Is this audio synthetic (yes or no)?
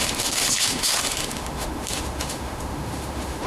yes